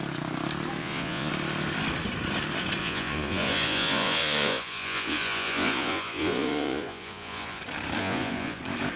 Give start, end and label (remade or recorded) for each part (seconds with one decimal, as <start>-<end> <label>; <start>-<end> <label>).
0.0-0.8 recorded; 0.8-1.3 remade; 1.3-2.8 recorded; 2.8-7.6 remade; 7.6-8.0 recorded; 8.0-8.6 remade; 8.6-9.0 recorded